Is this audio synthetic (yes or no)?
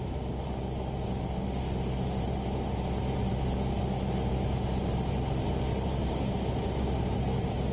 no